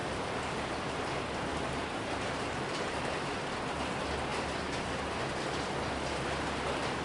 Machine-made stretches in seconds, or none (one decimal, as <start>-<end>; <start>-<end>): 0.0-0.6; 1.5-3.4